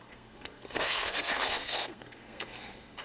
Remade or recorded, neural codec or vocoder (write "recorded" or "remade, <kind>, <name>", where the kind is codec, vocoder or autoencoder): remade, codec, SNAC